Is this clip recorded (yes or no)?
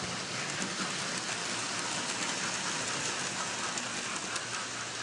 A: yes